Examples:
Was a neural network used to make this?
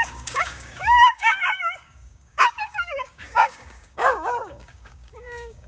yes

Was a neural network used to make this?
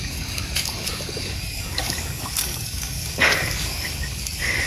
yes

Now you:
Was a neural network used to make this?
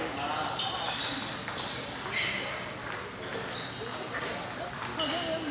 no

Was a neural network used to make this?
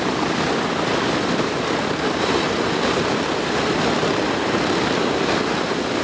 no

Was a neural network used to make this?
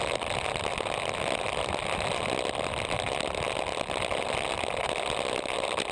no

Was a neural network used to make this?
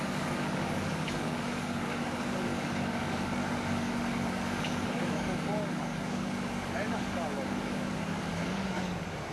yes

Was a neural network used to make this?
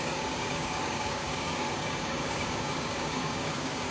yes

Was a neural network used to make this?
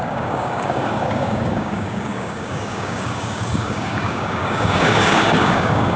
yes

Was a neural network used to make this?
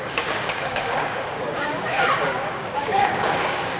yes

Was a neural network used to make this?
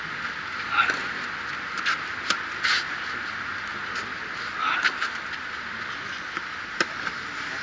no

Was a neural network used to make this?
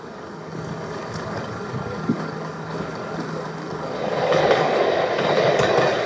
yes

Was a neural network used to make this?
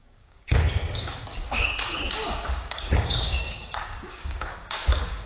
yes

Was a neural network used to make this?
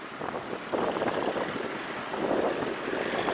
no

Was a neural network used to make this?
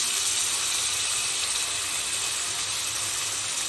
no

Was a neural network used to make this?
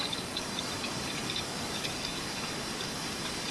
yes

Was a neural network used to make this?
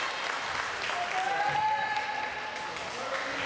no